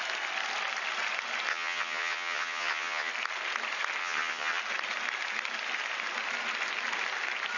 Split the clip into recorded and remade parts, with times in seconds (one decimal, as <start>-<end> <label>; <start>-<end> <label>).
0.0-1.5 recorded; 1.5-3.1 remade; 3.1-4.0 recorded; 4.0-4.6 remade; 4.6-7.6 recorded

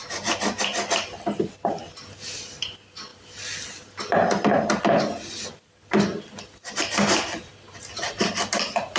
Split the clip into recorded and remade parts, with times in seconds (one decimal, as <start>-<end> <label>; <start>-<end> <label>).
0.0-9.0 recorded

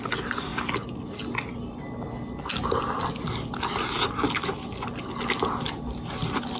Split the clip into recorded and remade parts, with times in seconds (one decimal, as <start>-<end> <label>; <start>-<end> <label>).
0.0-6.6 recorded

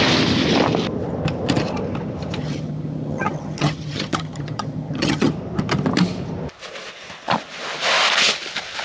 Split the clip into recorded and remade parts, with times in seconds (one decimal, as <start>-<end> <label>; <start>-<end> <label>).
0.0-2.4 recorded; 2.4-5.3 remade; 5.3-8.8 recorded

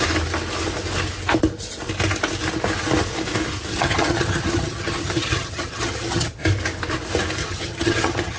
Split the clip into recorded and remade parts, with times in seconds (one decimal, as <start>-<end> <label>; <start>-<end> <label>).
0.0-3.7 recorded; 3.7-6.3 remade; 6.3-7.4 recorded; 7.4-8.4 remade

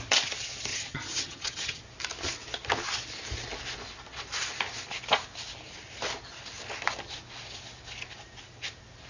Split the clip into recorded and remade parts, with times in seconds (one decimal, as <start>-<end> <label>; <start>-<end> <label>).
0.0-0.7 recorded; 0.7-1.8 remade; 1.8-9.1 recorded

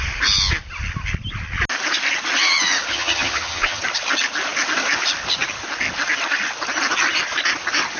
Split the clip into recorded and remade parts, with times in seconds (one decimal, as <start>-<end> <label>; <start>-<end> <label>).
0.0-2.9 recorded; 2.9-3.8 remade; 3.8-8.0 recorded